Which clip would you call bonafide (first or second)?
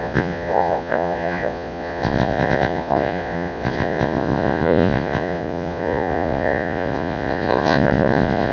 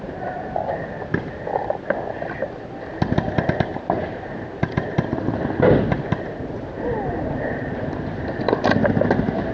second